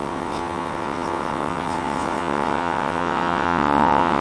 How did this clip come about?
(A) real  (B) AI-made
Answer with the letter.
B